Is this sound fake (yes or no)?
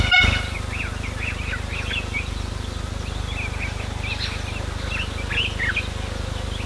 no